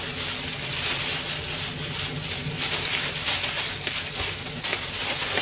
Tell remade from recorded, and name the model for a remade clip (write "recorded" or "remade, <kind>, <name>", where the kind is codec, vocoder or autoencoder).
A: recorded